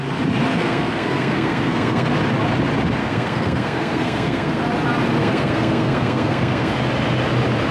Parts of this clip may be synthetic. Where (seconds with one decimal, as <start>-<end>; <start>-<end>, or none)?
0.5-2.1; 3.0-4.6; 5.2-6.7

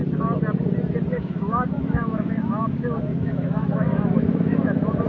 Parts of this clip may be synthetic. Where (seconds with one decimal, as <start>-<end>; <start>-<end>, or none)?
1.1-5.1

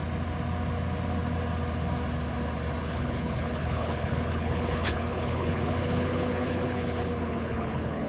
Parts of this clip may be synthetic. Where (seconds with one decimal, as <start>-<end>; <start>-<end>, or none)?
2.8-8.1

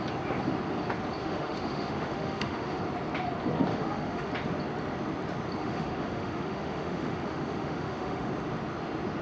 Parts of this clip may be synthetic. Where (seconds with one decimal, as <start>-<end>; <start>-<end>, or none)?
1.2-2.8; 3.7-4.3; 5.6-8.3